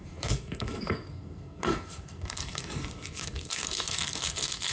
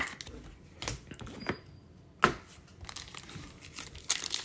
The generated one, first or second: first